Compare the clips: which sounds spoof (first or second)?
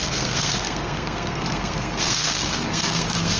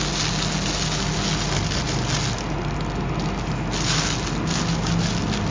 first